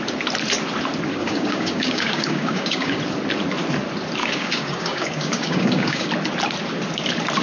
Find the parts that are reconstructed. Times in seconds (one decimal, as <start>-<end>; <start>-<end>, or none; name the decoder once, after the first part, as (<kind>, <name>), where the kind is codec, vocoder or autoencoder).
1.1-3.0 (codec, DAC); 4.2-6.1